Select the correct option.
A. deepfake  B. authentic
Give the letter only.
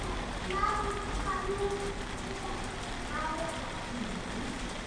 B